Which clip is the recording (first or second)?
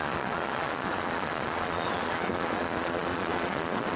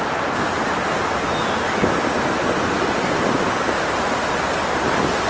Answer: second